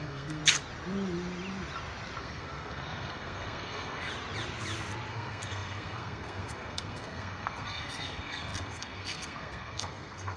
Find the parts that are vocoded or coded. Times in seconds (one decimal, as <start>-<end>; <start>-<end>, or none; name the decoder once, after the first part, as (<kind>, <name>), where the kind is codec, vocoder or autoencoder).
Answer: 0.0-0.4 (codec, SNAC); 2.2-4.1; 5.1-10.4